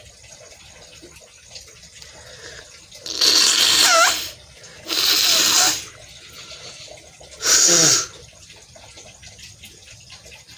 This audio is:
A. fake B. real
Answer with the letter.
B